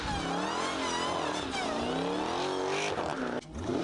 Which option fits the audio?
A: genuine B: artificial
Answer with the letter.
A